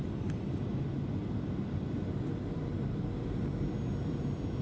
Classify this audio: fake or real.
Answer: real